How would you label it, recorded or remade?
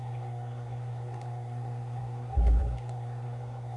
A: remade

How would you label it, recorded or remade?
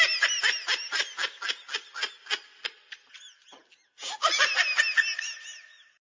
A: recorded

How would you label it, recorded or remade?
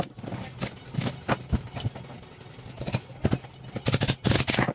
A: recorded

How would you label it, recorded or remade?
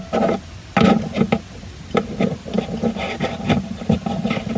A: recorded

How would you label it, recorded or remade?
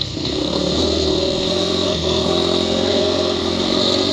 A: remade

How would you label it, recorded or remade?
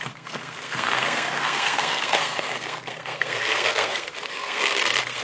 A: remade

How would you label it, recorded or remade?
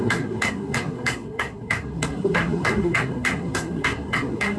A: remade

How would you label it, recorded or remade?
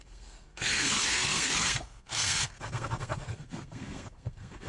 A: remade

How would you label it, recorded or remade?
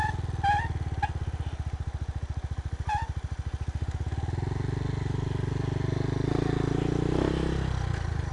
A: recorded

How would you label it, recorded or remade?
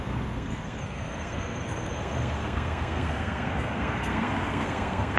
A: remade